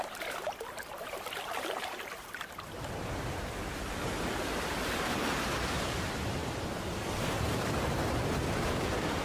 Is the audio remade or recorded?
remade